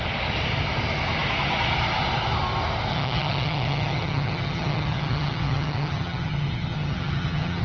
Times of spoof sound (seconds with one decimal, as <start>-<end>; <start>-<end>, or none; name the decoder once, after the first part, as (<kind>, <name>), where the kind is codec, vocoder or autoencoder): 2.9-7.6 (vocoder, HiFi-GAN)